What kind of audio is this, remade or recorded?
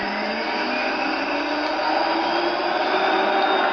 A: recorded